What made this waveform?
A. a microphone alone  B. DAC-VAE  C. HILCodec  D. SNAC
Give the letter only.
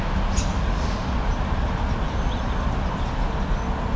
A